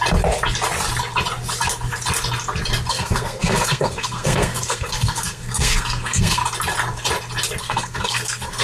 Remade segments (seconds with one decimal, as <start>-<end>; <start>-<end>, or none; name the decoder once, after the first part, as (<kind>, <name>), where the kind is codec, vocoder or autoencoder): 2.9-6.4 (codec, SNAC); 7.6-8.6